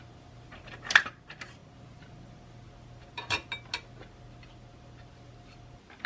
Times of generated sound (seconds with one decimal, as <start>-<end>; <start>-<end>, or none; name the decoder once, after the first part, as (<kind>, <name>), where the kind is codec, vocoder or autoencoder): 0.0-1.6 (vocoder, BigVGAN v2); 4.7-6.1